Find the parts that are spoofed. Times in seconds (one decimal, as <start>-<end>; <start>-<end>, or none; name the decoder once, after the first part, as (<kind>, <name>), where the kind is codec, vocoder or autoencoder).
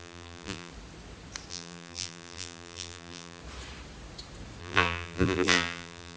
0.0-0.7 (vocoder, BigVGAN v2); 1.5-3.4; 4.6-6.2